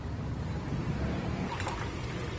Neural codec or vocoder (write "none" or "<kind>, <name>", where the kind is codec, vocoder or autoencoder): none